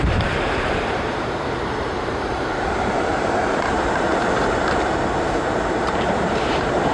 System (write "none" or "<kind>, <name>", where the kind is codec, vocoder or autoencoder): vocoder, BigVGAN v2